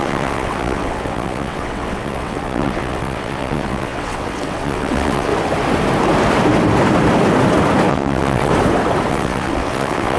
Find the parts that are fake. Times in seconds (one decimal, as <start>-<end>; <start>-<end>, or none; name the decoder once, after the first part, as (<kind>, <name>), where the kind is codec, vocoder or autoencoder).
0.0-5.3 (vocoder, WaveNeXt); 7.9-8.5; 9.1-10.2